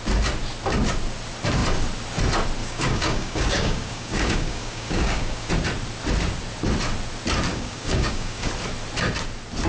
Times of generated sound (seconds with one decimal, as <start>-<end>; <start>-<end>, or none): 2.6-5.5; 7.5-8.5